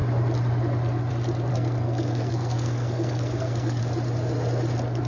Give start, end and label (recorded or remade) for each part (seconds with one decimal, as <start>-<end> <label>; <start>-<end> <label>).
0.0-1.5 recorded; 1.5-3.8 remade; 3.8-5.1 recorded